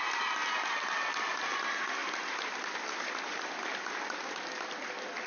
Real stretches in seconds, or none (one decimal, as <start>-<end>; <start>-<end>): 0.0-2.0; 3.9-5.3